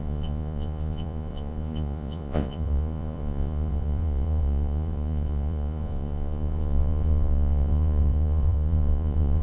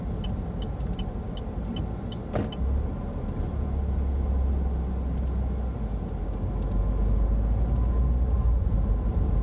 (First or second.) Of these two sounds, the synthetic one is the first